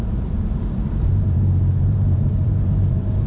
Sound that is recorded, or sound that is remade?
remade